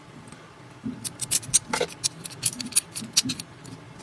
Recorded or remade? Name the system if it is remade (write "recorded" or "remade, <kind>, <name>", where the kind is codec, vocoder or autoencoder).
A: recorded